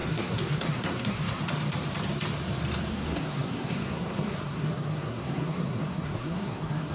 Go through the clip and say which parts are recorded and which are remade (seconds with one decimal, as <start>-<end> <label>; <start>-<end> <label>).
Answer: 0.0-1.4 remade; 1.4-2.9 recorded; 2.9-6.9 remade